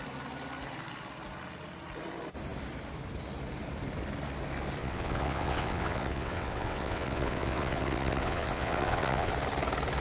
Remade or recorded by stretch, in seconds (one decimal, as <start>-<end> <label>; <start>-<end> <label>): 0.0-4.8 recorded; 4.8-9.3 remade; 9.3-10.0 recorded